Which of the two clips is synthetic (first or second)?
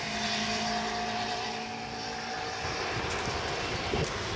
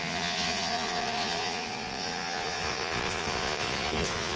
second